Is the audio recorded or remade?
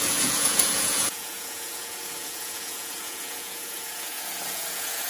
remade